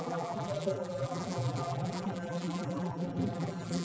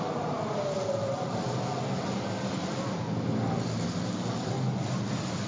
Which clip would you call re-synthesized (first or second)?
first